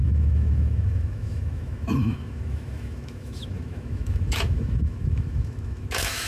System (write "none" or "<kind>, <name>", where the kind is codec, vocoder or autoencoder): autoencoder, DAC-VAE